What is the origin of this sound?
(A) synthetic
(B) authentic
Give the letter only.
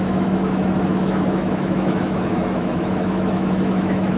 A